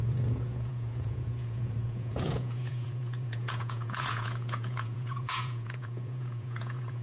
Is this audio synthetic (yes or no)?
yes